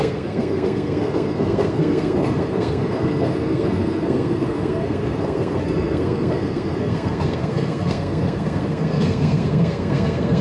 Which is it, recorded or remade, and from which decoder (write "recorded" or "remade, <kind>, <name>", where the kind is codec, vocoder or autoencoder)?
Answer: remade, codec, SNAC